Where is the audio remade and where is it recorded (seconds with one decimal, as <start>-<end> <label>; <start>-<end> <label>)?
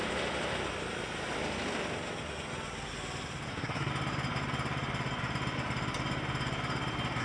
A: 0.0-3.5 recorded; 3.5-3.9 remade; 3.9-7.2 recorded